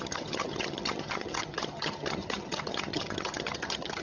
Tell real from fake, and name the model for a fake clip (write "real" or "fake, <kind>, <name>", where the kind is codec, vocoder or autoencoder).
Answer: fake, vocoder, HiFi-GAN